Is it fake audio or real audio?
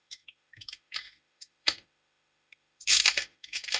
fake